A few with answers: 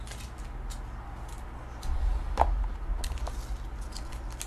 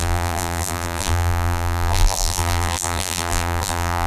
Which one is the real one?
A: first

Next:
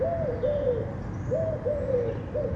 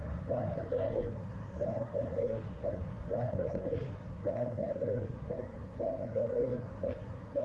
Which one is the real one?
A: first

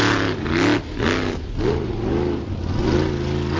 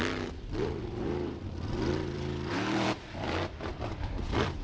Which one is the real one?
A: first